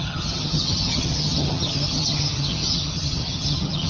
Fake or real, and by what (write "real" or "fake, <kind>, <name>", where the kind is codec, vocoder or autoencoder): fake, vocoder, HiFi-GAN